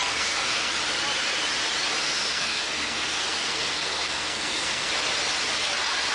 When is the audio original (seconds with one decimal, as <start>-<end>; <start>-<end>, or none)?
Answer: 0.7-2.3; 4.9-6.1